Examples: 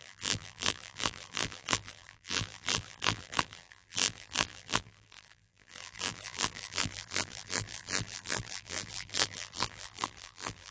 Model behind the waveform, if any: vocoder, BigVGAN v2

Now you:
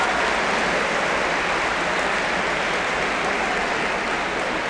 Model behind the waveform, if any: none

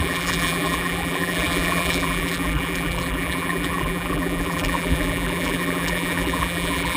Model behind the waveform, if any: vocoder, BigVGAN v2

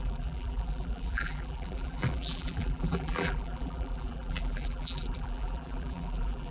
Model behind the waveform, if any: vocoder, BigVGAN v2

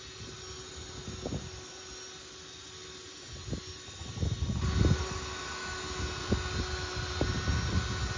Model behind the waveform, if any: none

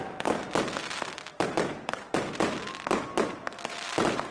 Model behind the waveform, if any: none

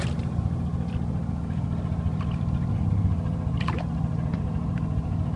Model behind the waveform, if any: none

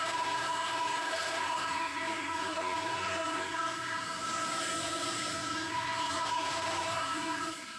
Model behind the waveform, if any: codec, SNAC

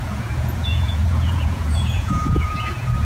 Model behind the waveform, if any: vocoder, Vocos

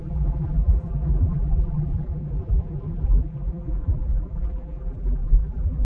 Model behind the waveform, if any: vocoder, BigVGAN v2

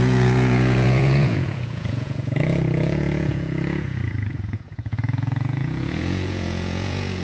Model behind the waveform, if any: vocoder, Vocos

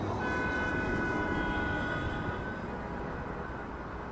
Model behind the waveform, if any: none